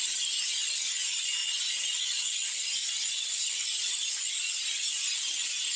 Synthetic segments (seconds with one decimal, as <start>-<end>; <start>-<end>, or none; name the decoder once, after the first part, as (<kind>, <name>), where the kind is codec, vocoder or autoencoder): none